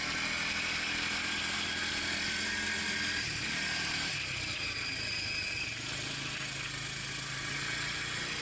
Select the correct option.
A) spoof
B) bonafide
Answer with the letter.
B